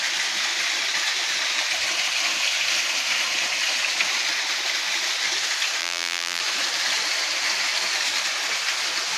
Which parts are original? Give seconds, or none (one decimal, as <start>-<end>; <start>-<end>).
0.0-5.8; 6.4-9.2